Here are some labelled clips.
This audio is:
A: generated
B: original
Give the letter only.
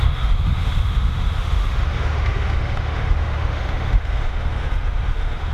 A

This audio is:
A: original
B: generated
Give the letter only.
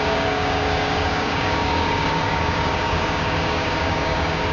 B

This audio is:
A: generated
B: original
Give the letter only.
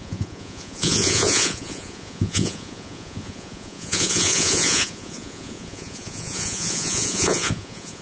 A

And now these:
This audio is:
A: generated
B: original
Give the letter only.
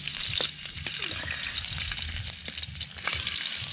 B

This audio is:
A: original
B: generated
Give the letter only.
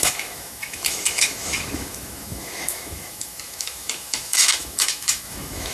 B